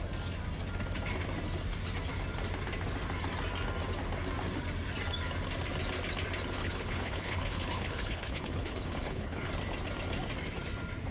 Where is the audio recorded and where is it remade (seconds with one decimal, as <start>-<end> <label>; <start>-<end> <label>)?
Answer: 0.0-6.6 recorded; 6.6-9.5 remade; 9.5-11.1 recorded